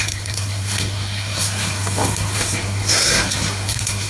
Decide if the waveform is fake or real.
fake